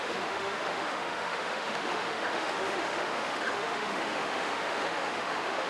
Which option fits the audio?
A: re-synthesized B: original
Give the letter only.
A